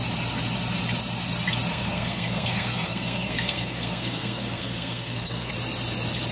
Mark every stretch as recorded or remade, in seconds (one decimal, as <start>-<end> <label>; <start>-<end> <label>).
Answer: 0.0-1.7 recorded; 1.7-5.5 remade; 5.5-6.3 recorded